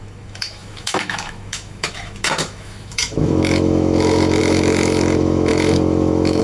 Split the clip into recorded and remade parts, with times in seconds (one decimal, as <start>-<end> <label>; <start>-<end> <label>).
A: 0.0-6.4 remade